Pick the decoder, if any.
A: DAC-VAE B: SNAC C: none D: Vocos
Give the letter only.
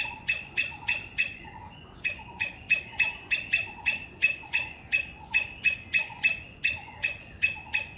D